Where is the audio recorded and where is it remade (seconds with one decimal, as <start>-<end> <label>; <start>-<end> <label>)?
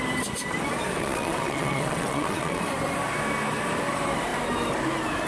0.0-1.0 recorded; 1.0-2.6 remade; 2.6-5.3 recorded